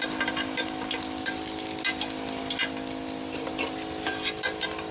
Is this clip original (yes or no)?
yes